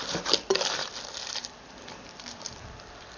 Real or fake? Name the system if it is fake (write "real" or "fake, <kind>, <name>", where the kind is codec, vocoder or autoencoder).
fake, vocoder, BigVGAN v2